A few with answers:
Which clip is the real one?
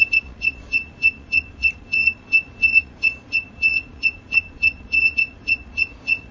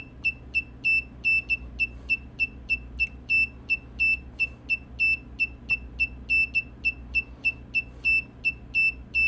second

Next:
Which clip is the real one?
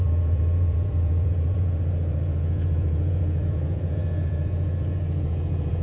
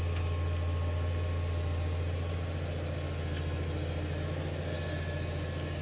second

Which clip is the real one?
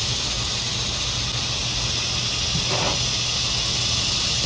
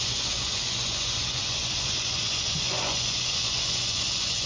first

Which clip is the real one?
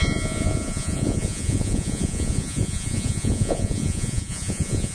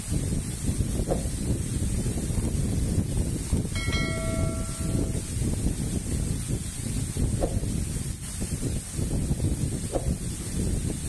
second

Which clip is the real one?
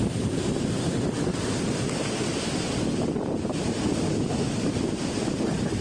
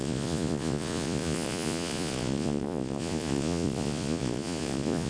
first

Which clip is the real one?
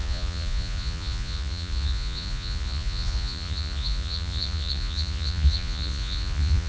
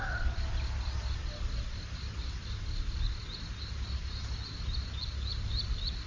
second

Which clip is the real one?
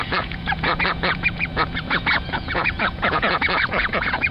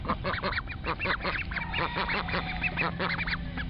second